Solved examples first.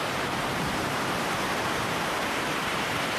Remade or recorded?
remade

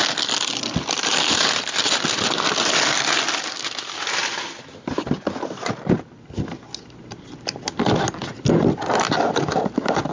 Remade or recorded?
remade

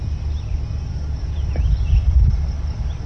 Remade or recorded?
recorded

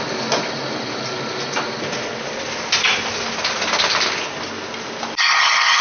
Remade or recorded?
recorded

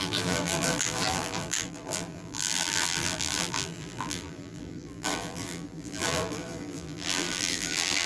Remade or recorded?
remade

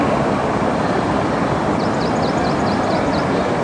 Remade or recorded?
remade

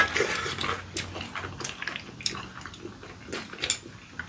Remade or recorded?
recorded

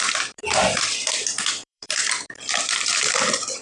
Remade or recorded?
remade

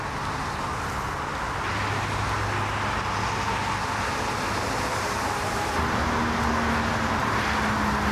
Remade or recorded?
recorded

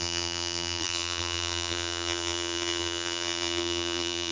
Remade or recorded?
remade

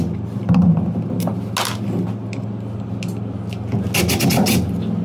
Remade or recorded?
recorded